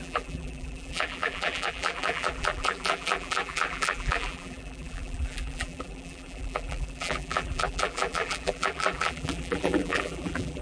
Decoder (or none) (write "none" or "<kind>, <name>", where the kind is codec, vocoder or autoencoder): vocoder, BigVGAN v2